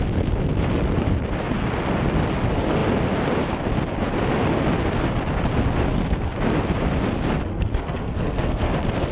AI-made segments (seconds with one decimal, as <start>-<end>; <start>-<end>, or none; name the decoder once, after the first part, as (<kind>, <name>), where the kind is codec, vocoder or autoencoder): 7.5-8.7 (codec, SNAC)